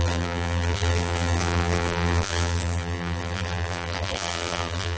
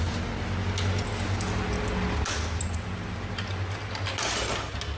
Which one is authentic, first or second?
second